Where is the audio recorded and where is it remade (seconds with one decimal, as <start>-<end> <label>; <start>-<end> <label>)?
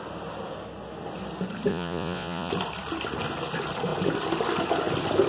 0.0-1.7 recorded; 1.7-2.5 remade; 2.5-5.3 recorded